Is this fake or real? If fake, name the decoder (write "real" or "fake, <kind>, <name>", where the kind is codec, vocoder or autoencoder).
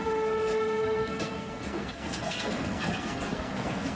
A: fake, codec, SNAC